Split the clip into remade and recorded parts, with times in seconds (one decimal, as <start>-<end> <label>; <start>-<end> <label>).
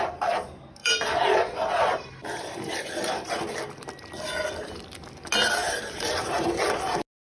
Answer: 0.0-0.8 recorded; 0.8-3.3 remade; 3.3-5.6 recorded; 5.6-6.5 remade; 6.5-7.2 recorded